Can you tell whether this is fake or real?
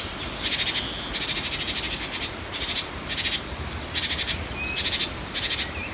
real